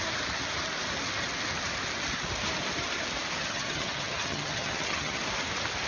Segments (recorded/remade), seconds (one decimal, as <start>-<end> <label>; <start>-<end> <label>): 0.0-3.4 recorded; 3.4-5.2 remade; 5.2-5.9 recorded